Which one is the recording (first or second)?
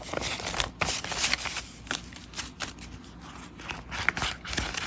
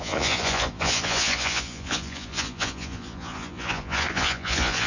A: first